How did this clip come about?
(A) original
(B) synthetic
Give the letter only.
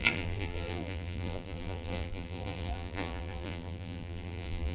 B